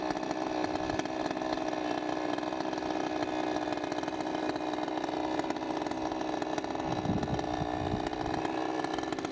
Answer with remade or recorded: recorded